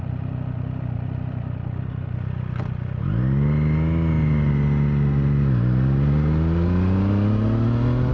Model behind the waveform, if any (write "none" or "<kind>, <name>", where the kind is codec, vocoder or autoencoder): none